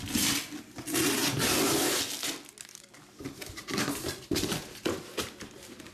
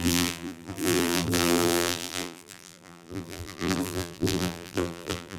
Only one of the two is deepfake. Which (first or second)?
second